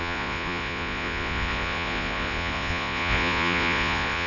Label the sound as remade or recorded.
remade